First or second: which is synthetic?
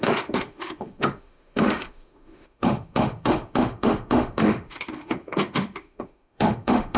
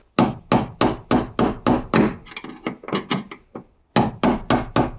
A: first